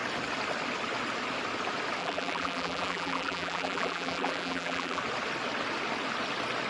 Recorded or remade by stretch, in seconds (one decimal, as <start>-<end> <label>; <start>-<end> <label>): 0.0-2.0 recorded; 2.0-5.0 remade; 5.0-6.7 recorded